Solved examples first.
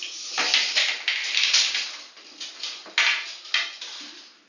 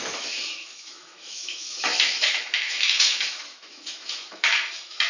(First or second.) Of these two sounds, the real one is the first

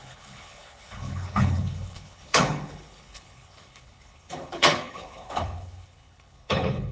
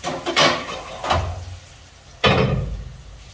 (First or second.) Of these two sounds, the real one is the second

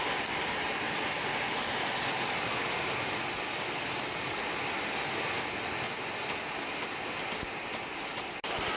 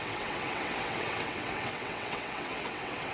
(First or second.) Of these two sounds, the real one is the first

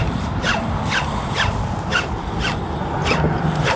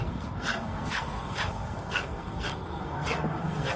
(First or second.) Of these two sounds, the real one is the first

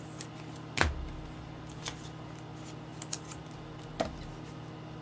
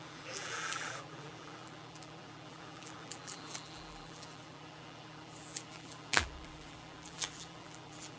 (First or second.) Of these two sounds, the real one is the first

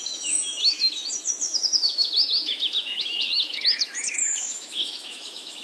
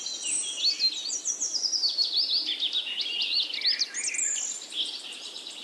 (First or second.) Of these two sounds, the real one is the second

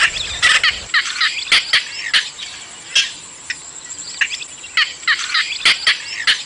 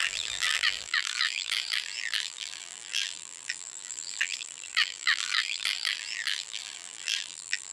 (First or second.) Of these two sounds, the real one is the first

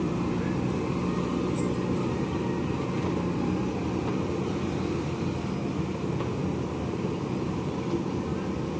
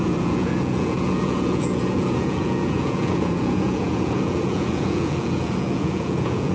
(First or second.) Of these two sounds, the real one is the first